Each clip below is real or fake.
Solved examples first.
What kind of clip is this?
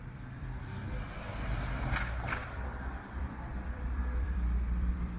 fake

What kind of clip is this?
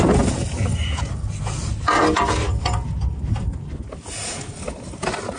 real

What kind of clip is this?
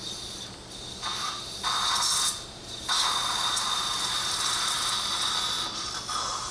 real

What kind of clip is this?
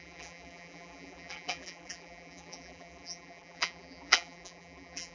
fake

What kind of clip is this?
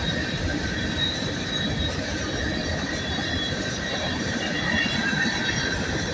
fake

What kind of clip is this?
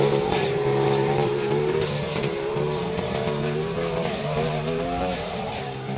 fake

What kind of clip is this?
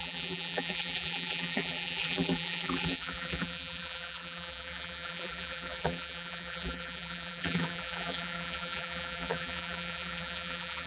fake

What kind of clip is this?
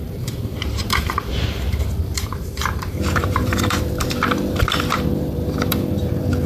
fake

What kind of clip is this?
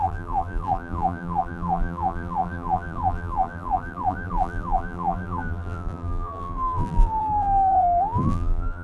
fake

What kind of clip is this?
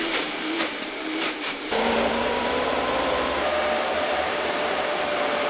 fake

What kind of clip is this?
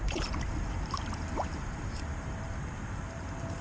fake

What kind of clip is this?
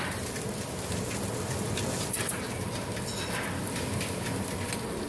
real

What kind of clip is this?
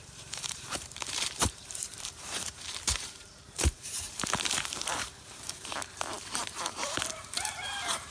fake